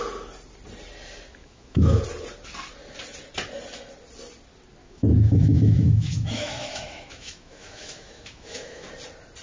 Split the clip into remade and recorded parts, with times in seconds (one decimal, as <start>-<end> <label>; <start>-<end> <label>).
0.0-1.4 recorded; 1.4-2.0 remade; 2.0-4.8 recorded; 4.8-8.9 remade; 8.9-9.4 recorded